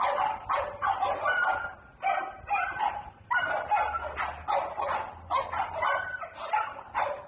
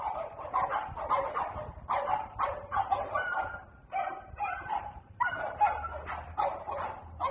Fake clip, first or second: second